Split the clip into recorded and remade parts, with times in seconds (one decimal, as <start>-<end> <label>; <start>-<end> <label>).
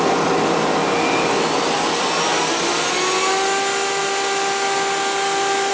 0.0-5.7 recorded